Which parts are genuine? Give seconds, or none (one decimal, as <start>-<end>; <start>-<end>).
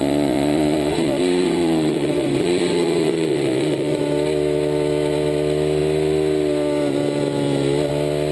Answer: 4.0-8.3